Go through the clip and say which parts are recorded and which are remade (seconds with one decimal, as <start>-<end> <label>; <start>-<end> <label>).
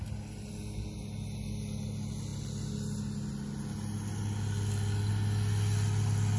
0.0-6.4 recorded